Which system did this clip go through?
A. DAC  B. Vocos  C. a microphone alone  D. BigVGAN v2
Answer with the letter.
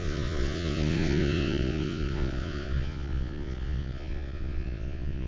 B